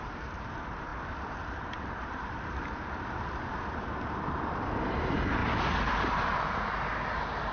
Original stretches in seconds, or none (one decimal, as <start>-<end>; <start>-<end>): 5.4-5.9